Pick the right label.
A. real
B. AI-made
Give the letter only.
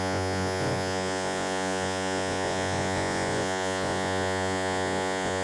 B